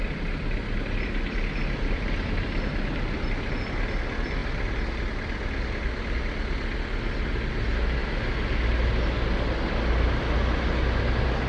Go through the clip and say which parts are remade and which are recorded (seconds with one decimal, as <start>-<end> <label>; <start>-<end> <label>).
0.0-11.5 recorded